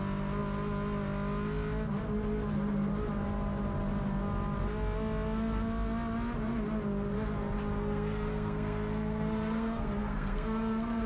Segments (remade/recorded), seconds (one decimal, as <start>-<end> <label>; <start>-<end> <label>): 0.0-7.8 recorded; 7.8-11.1 remade